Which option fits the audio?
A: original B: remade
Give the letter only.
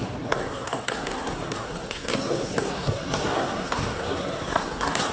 B